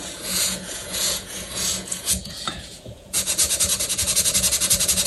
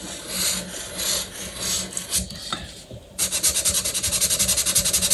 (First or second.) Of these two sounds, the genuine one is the second